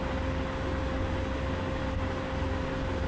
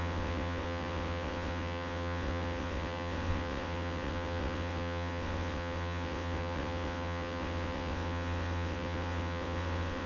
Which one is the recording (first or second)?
first